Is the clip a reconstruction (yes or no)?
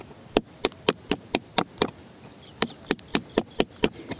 no